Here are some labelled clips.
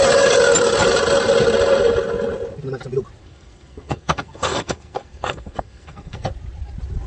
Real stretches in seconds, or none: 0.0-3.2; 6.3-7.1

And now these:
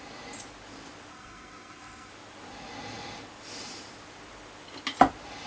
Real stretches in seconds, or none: 0.0-1.1; 2.1-5.5

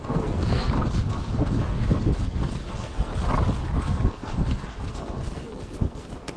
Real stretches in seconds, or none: 3.1-3.8

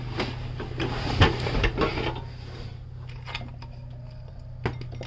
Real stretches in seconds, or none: 0.0-5.1

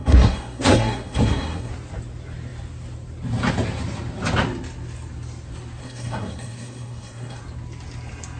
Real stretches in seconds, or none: 1.7-5.8; 7.4-8.4

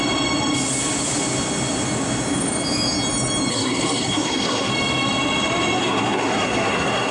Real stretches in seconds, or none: 0.0-3.5; 4.7-5.8